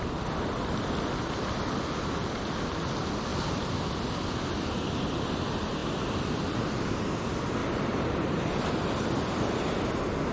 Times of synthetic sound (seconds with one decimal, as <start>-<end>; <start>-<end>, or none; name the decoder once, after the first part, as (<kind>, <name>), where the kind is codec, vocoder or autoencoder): 3.3-3.9 (vocoder, BigVGAN v2); 7.6-8.7